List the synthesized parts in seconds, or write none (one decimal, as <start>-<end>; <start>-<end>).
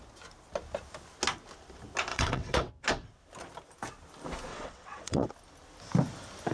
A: 2.1-2.7; 4.5-5.3